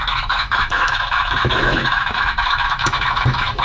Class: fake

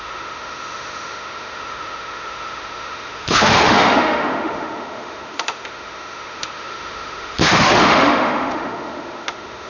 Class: fake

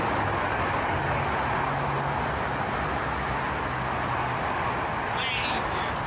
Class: real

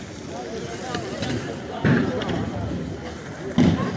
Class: real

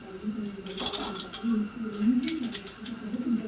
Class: real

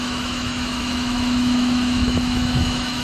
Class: fake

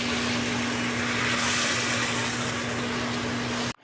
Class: real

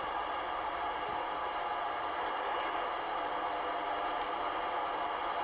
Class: real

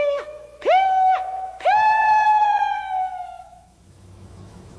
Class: fake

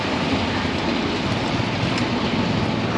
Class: real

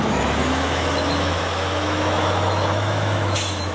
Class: fake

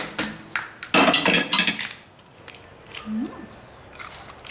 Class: real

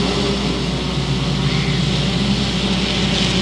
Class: real